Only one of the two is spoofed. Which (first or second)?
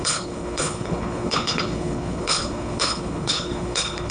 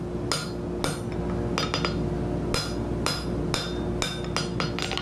first